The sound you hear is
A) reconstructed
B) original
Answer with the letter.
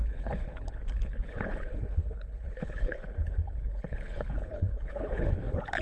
A